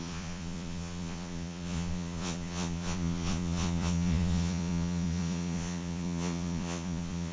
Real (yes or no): no